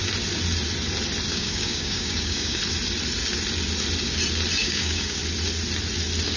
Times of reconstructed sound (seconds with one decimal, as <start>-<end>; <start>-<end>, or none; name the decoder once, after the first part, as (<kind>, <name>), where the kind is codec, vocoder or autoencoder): 1.3-2.6 (codec, DAC); 4.6-5.2